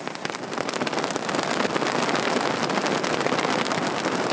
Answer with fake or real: real